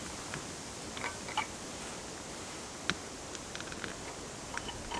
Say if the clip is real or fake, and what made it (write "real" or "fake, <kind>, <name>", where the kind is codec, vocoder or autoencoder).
real